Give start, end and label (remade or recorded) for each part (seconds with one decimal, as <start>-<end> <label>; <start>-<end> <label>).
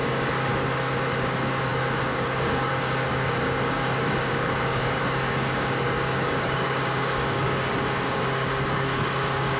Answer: 0.0-0.5 remade; 0.5-1.1 recorded; 1.1-9.6 remade